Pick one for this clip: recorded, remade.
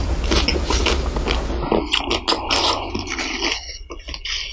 recorded